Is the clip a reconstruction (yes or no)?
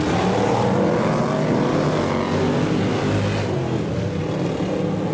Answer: no